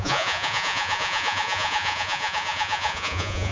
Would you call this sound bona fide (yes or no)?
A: no